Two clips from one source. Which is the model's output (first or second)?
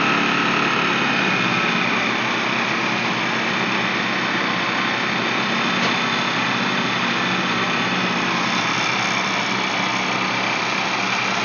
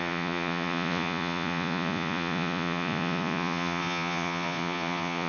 second